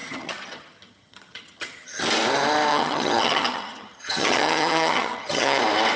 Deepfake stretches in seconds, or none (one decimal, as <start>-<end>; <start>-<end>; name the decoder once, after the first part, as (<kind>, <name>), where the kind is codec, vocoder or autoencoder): 0.0-2.0 (vocoder, HiFi-GAN); 2.7-5.6